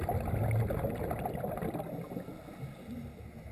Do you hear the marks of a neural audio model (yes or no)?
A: no